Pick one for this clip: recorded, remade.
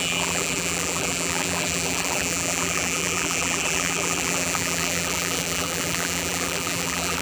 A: remade